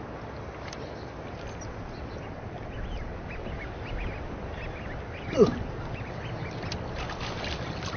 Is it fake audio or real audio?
real